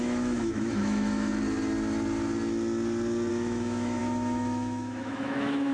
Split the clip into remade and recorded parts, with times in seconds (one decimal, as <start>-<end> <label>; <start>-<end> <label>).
0.0-1.3 remade; 1.3-3.3 recorded; 3.3-5.7 remade